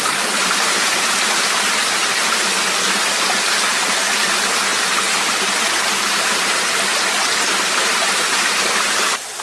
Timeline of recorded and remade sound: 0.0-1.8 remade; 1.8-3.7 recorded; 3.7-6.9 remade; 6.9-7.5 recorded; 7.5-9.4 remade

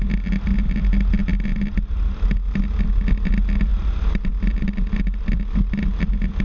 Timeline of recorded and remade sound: 0.0-6.4 recorded

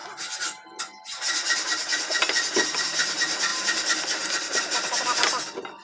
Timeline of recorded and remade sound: 0.0-3.5 recorded; 3.5-4.6 remade; 4.6-5.8 recorded

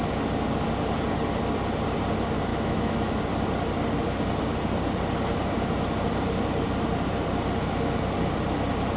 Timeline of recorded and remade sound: 0.0-2.5 recorded; 2.5-3.2 remade; 3.2-9.0 recorded

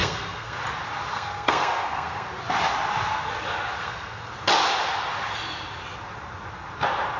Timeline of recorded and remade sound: 0.0-0.6 remade; 0.6-1.1 recorded; 1.1-2.3 remade; 2.3-3.8 recorded; 3.8-4.3 remade; 4.3-7.2 recorded

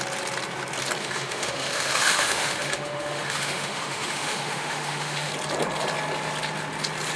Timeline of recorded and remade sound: 0.0-1.0 recorded; 1.0-5.3 remade; 5.3-7.2 recorded